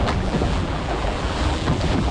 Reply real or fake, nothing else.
fake